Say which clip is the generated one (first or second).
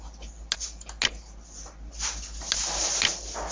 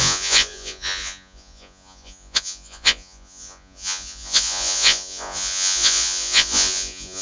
second